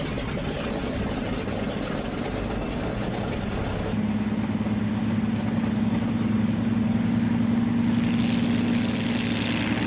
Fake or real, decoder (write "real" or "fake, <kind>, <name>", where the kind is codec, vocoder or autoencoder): real